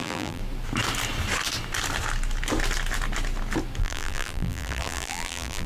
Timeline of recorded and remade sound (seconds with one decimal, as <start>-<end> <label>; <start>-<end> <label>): 0.0-0.4 remade; 0.4-3.8 recorded; 3.8-5.7 remade